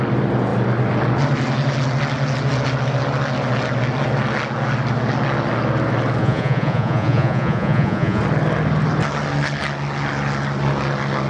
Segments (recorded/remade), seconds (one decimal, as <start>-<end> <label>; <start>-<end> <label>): 0.0-6.2 recorded; 6.2-8.2 remade; 8.2-11.3 recorded